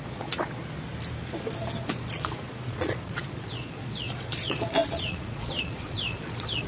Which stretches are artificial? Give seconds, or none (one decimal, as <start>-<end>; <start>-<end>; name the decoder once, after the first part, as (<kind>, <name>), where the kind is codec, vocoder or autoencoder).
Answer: 0.0-0.6 (vocoder, Vocos); 1.8-6.7

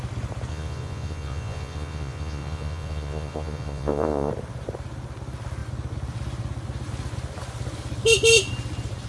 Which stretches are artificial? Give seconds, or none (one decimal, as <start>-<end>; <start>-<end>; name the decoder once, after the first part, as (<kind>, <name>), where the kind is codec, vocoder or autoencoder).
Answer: 0.5-4.3 (vocoder, Vocos)

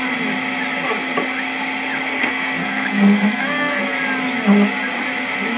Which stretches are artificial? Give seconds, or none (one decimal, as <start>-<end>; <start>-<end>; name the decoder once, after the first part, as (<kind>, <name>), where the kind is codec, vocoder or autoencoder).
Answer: 2.1-3.8 (codec, SNAC)